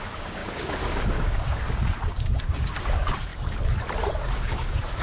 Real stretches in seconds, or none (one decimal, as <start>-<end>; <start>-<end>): 3.3-4.1